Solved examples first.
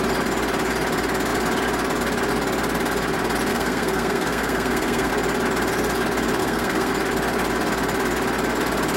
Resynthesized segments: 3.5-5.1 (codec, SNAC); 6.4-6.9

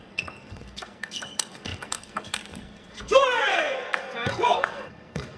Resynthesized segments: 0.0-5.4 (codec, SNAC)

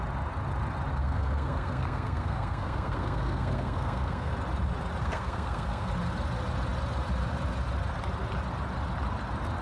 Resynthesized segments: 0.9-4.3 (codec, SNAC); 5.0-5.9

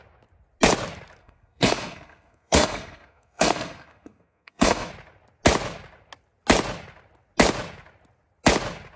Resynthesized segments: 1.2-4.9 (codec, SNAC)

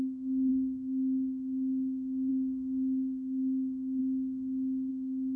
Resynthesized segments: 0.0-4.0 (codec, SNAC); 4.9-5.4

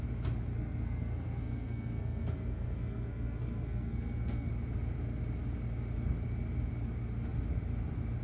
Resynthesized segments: 0.5-4.5 (codec, SNAC)